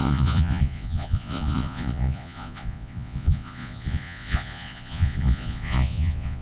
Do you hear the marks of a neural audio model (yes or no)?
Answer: yes